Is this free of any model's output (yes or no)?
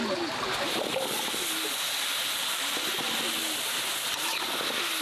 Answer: yes